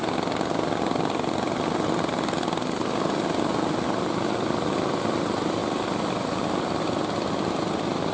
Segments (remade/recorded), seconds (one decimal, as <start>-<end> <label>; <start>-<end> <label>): 0.0-8.1 recorded